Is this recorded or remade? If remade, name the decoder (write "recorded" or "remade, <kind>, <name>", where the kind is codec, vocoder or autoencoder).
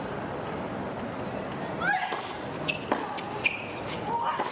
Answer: recorded